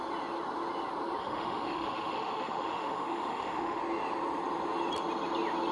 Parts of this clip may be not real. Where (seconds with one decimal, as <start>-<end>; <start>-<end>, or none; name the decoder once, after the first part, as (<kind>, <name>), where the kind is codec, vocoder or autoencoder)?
1.2-3.8 (autoencoder, DAC-VAE)